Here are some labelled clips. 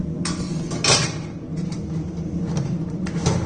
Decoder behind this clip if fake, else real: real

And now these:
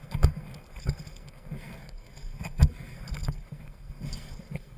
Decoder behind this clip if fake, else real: fake, codec, SNAC